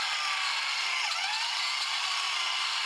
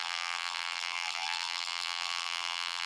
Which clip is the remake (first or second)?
second